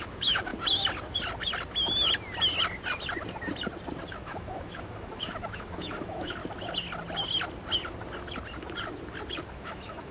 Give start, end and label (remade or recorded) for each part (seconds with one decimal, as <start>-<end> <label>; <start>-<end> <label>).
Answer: 0.0-0.5 remade; 0.5-4.1 recorded; 4.1-6.4 remade; 6.4-9.5 recorded; 9.5-10.1 remade

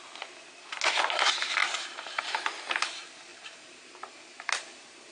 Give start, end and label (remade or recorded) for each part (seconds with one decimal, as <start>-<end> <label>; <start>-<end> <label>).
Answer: 0.0-1.6 recorded; 1.6-2.2 remade; 2.2-3.3 recorded; 3.3-4.5 remade; 4.5-5.1 recorded

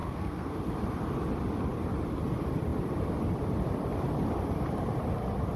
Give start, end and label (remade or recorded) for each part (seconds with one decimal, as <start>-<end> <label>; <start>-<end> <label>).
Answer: 0.0-0.6 remade; 0.6-5.6 recorded

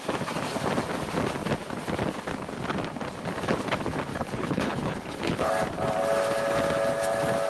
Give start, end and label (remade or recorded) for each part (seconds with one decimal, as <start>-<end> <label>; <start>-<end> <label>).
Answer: 0.0-4.1 recorded; 4.1-5.5 remade; 5.5-7.5 recorded

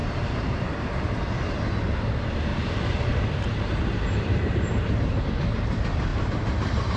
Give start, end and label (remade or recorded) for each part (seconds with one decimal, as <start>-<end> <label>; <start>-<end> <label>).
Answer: 0.0-0.9 remade; 0.9-2.5 recorded; 2.5-5.2 remade; 5.2-6.1 recorded; 6.1-7.0 remade

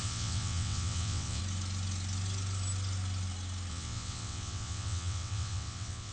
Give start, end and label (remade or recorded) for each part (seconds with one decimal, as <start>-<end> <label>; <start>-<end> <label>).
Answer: 0.0-1.4 remade; 1.4-3.7 recorded; 3.7-6.1 remade